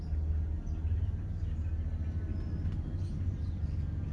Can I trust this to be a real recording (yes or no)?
yes